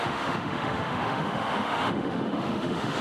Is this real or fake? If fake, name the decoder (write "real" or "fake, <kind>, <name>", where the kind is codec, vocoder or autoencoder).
fake, autoencoder, DAC-VAE